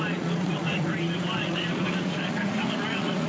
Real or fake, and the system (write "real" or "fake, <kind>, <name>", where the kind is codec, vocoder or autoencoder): fake, vocoder, Vocos